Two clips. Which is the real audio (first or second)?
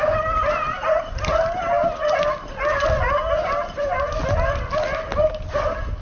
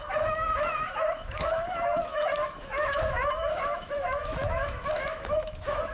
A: first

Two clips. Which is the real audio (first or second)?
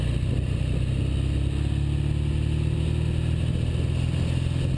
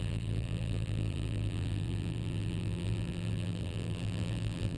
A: first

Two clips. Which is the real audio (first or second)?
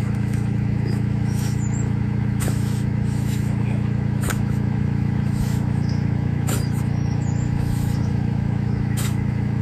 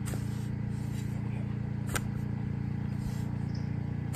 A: second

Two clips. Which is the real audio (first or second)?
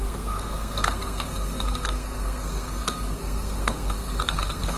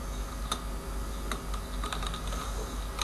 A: second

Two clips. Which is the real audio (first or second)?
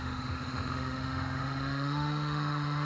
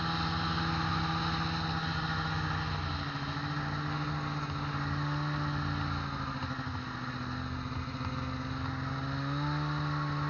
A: second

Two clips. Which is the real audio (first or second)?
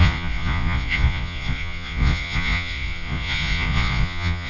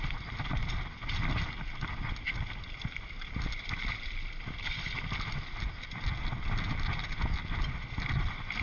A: second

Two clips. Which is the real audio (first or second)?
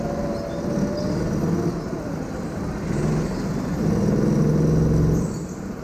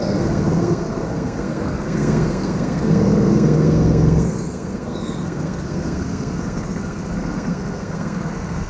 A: first